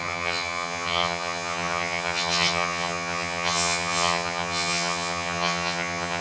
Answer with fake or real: fake